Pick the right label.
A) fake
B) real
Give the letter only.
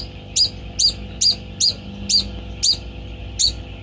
B